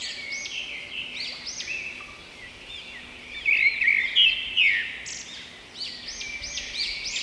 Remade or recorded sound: recorded